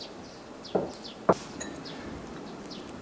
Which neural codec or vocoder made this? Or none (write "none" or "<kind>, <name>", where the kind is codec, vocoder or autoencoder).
none